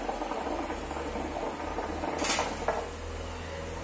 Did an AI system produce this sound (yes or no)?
no